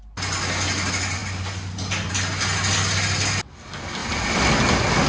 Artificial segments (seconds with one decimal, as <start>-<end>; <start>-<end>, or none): none